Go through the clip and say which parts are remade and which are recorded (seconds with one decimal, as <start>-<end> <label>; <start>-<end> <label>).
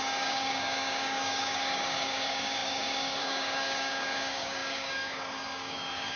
0.0-6.2 remade